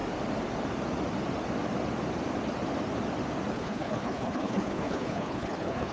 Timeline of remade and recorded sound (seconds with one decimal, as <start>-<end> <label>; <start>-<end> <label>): 0.0-3.5 recorded; 3.5-5.9 remade